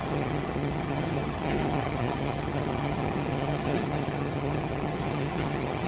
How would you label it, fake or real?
fake